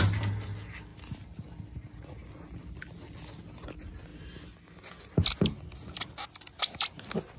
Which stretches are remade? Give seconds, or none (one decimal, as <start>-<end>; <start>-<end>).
none